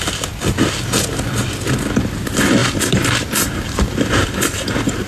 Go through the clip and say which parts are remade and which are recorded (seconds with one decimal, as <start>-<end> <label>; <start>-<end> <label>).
0.0-2.6 recorded; 2.6-5.1 remade